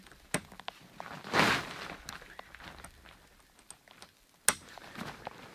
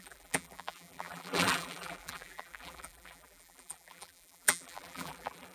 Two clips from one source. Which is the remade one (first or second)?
second